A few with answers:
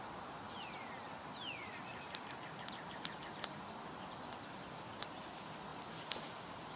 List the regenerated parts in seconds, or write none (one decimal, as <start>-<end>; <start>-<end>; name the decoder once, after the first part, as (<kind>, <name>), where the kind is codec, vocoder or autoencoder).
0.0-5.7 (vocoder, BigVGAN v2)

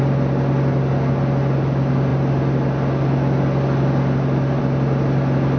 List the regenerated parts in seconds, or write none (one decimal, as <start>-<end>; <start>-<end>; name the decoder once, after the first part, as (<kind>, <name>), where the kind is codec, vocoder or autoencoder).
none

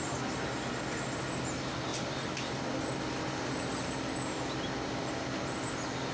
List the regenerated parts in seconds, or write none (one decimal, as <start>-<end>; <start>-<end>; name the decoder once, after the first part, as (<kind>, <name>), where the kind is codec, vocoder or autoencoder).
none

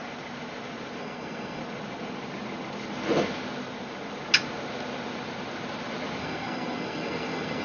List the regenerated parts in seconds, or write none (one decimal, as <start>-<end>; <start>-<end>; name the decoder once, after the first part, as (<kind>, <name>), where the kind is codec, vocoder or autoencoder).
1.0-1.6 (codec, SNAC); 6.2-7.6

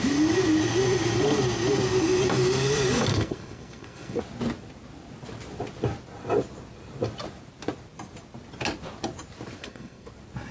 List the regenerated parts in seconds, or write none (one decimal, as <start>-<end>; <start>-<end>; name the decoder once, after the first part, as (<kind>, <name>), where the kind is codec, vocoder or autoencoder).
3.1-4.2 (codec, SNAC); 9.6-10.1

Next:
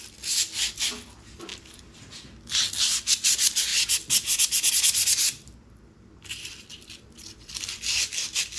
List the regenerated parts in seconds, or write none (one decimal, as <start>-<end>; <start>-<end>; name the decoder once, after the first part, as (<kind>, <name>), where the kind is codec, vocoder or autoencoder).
none